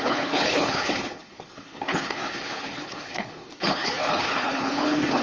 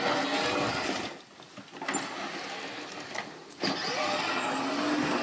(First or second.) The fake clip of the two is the first